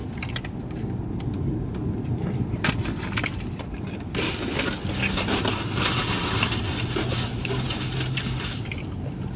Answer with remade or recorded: recorded